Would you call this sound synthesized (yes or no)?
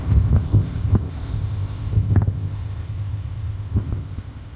yes